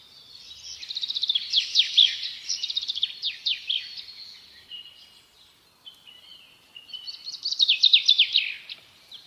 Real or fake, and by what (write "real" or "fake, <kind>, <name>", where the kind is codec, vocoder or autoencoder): real